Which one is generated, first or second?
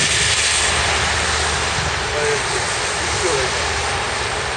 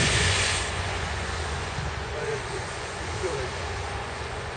second